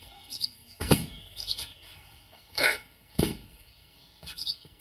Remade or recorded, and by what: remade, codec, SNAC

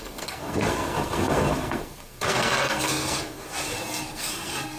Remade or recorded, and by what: remade, codec, SNAC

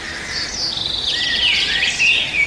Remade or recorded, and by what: recorded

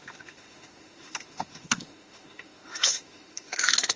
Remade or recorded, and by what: remade, autoencoder, DAC-VAE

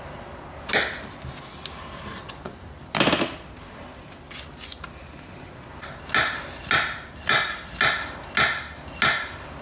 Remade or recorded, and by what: recorded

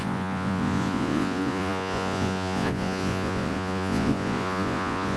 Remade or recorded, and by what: remade, vocoder, Vocos